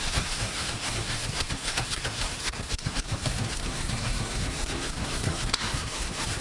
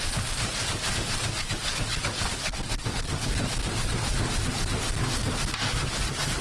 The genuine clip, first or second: second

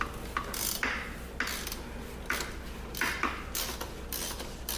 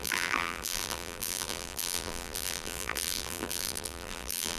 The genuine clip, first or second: first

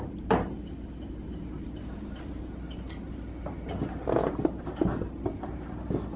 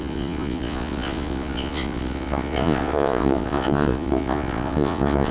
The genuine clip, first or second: first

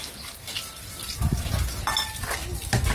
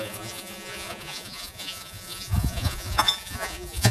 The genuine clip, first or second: first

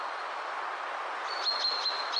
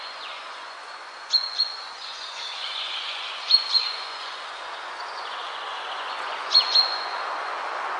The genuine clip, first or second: first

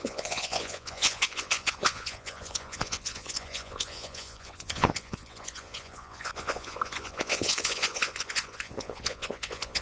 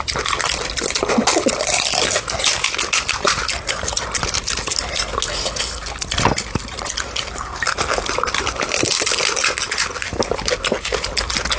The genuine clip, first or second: second